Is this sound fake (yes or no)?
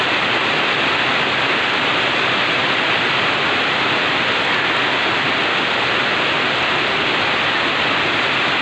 no